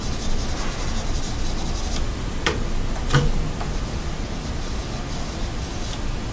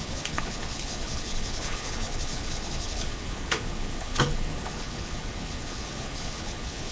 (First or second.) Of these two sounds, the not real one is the second